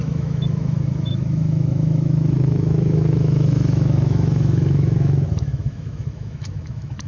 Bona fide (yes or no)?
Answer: no